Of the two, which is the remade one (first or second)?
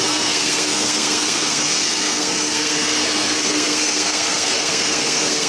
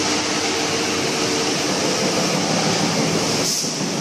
first